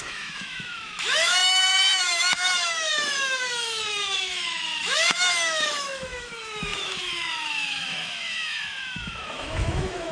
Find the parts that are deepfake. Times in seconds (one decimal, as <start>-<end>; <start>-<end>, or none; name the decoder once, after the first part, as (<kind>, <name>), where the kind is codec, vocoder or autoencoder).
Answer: 0.0-10.1 (autoencoder, DAC-VAE)